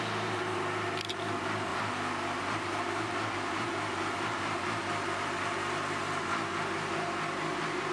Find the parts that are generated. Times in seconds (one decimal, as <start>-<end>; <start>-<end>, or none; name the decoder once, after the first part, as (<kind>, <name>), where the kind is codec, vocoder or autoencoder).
1.7-6.0 (vocoder, BigVGAN v2)